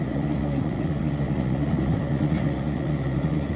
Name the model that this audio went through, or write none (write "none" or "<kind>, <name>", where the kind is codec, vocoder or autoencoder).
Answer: vocoder, Vocos